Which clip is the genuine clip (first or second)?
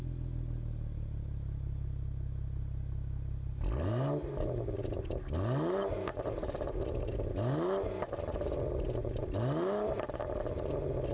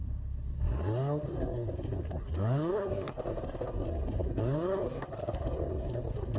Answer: first